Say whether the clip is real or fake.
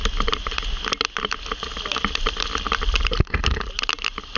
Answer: real